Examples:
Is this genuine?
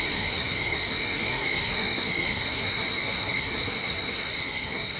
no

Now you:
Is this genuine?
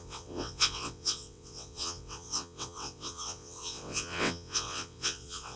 no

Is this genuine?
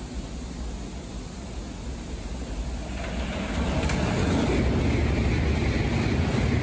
yes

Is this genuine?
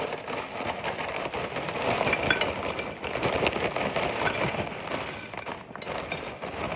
yes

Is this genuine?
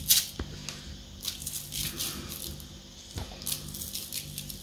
yes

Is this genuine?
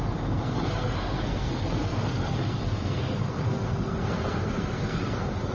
no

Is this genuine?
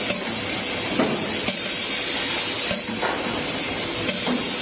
yes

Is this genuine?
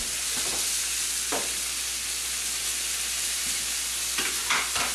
yes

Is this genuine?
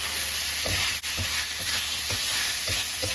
yes